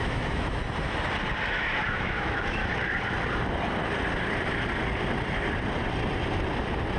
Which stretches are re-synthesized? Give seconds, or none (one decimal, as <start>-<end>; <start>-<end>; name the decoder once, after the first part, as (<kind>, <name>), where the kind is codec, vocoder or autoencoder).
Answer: 0.0-0.6 (autoencoder, DAC-VAE); 1.5-2.6